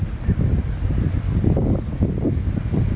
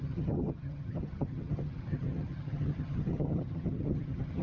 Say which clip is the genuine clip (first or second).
first